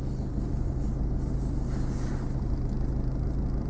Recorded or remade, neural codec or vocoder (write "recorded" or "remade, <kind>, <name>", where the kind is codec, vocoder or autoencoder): recorded